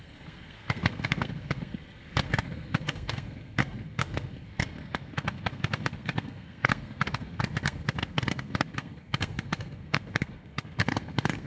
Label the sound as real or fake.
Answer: fake